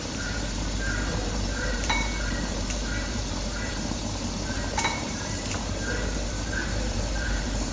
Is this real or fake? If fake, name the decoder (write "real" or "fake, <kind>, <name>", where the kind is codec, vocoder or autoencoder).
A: fake, vocoder, BigVGAN v2